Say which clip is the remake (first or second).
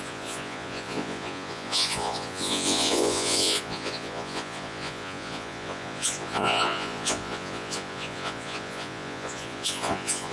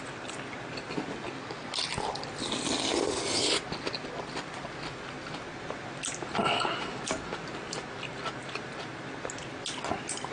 first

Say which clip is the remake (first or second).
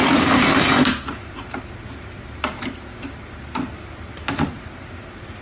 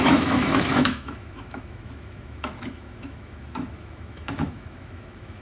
second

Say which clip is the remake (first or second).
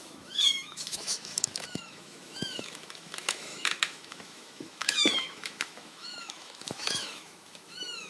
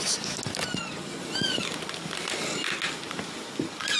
first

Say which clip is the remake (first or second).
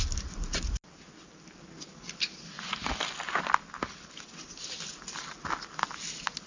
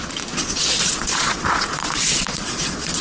second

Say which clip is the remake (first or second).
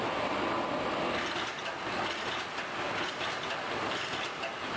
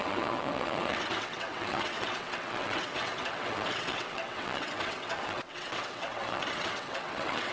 second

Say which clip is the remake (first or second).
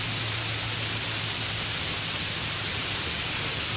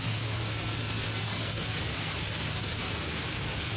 second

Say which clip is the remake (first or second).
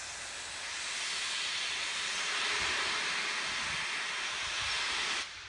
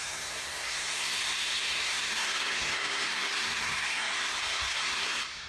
second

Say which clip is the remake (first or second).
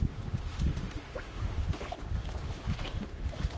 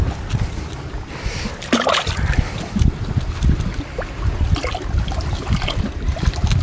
first